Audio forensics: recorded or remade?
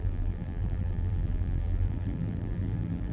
remade